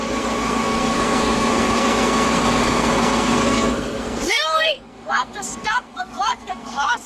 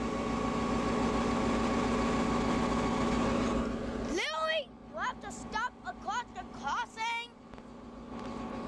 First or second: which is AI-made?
first